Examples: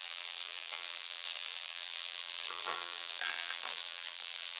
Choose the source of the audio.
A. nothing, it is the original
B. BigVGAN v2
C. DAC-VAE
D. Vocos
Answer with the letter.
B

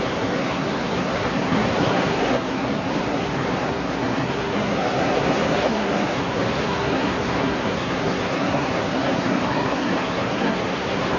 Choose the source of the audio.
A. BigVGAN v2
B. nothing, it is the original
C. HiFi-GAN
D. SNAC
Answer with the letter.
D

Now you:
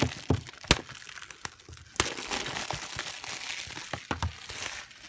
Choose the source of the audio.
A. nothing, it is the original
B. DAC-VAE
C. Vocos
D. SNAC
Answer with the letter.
A